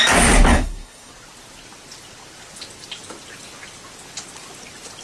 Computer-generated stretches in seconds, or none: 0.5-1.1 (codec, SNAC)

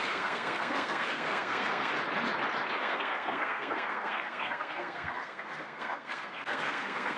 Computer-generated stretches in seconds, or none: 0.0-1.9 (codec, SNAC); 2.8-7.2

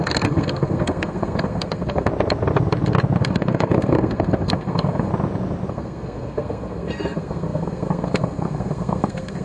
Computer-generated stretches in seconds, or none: 0.0-2.1 (codec, SNAC); 3.2-5.1; 5.7-9.4

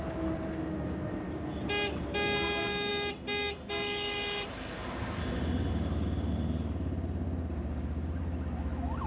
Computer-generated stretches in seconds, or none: none

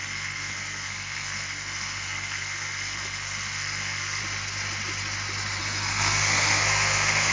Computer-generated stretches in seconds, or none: 0.0-4.2 (codec, SNAC); 5.6-7.3

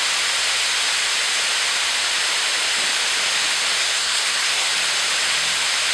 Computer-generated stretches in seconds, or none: 3.8-4.7 (codec, SNAC)

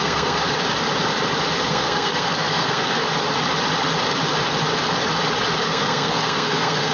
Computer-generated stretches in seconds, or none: 0.0-0.4 (codec, SNAC); 1.7-3.0; 5.6-6.9